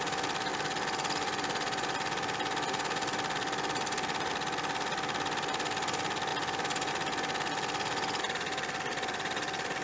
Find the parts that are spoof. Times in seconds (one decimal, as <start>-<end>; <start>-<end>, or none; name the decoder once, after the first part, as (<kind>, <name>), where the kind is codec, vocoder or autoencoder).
0.5-4.3 (vocoder, BigVGAN v2); 6.3-6.9